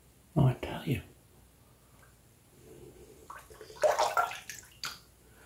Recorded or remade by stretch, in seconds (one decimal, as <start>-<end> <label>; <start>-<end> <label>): 0.0-5.5 recorded